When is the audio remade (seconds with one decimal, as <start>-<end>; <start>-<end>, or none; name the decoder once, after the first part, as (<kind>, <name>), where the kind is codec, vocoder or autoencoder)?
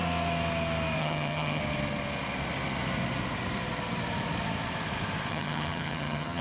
1.0-1.6 (vocoder, HiFi-GAN); 5.3-6.4